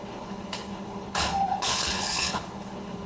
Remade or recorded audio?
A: remade